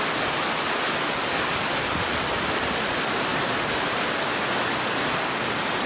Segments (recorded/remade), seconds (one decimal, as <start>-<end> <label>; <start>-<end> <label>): 0.0-3.3 recorded; 3.3-4.1 remade; 4.1-5.9 recorded